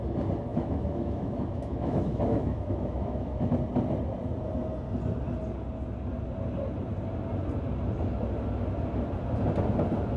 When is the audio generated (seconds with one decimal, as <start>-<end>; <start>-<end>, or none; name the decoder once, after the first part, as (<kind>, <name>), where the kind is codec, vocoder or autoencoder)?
0.5-3.5 (autoencoder, DAC-VAE)